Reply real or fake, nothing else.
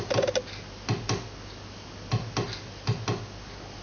real